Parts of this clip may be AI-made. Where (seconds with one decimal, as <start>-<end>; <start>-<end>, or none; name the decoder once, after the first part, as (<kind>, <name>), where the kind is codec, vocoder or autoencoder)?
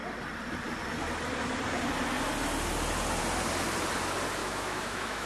4.4-5.3 (autoencoder, DAC-VAE)